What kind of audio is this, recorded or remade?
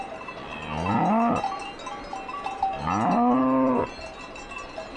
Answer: recorded